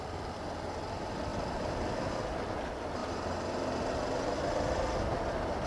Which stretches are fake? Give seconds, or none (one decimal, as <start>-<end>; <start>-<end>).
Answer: 1.3-2.1